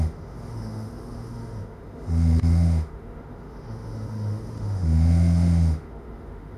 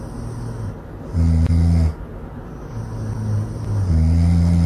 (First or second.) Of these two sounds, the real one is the second